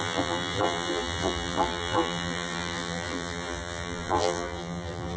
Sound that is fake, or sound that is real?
fake